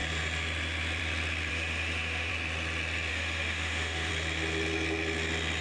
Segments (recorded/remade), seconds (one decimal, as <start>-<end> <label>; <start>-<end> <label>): 0.0-1.5 recorded; 1.5-2.3 remade; 2.3-3.1 recorded; 3.1-4.1 remade; 4.1-5.6 recorded